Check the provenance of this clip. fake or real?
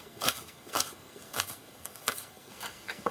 fake